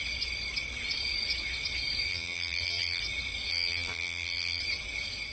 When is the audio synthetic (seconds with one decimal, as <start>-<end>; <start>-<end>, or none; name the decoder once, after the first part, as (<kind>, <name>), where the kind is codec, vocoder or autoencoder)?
2.1-3.0 (vocoder, BigVGAN v2); 3.5-4.6

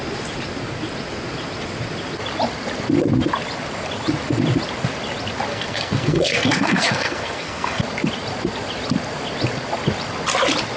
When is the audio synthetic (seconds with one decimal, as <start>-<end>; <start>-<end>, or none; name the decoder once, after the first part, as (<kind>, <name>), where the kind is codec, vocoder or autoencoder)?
5.5-7.8 (codec, SNAC)

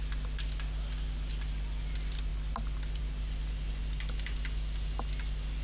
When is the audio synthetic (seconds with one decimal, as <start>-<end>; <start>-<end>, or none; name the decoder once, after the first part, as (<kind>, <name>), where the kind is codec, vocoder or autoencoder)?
none

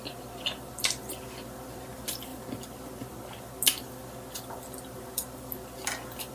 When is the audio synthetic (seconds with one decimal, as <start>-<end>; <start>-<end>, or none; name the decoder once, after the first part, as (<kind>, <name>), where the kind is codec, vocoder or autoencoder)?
none

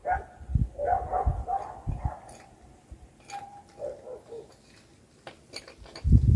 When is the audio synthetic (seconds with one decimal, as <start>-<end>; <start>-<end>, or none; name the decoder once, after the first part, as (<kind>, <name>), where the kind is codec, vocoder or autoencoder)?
none

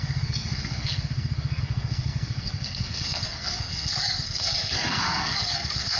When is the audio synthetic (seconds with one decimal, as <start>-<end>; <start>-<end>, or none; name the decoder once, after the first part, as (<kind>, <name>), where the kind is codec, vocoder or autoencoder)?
0.0-6.0 (codec, SNAC)